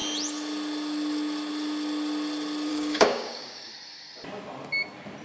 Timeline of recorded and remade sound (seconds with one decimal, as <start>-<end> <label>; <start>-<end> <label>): 0.0-2.7 recorded; 2.7-3.7 remade; 3.7-5.2 recorded